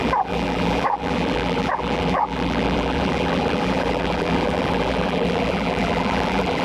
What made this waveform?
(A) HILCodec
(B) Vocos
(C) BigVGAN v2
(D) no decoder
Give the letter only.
C